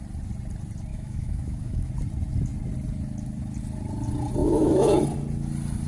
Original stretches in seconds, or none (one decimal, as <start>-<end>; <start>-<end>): 0.0-0.9; 1.9-4.4; 5.0-5.9